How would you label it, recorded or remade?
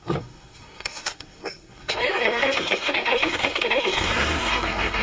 remade